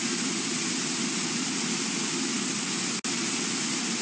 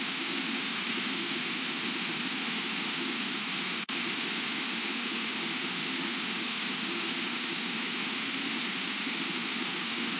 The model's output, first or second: second